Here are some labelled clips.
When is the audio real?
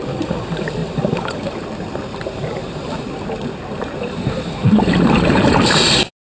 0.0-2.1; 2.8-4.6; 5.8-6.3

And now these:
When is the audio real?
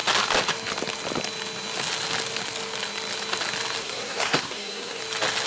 0.0-3.8; 5.0-5.5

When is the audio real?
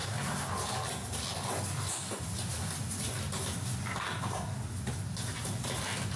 0.5-6.2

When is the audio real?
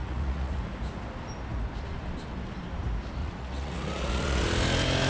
0.6-3.2; 4.4-5.1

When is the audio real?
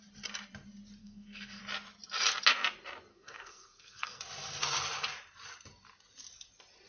0.0-1.0; 1.6-3.1; 4.2-6.9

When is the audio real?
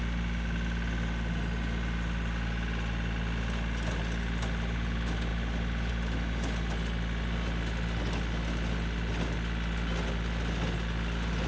0.0-11.5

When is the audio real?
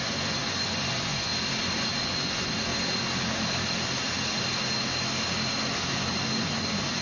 1.3-1.9; 2.7-6.4